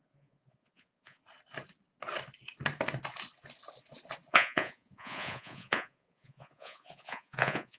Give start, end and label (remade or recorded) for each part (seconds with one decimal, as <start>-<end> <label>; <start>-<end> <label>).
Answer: 0.0-1.2 remade; 1.2-4.3 recorded; 4.3-7.8 remade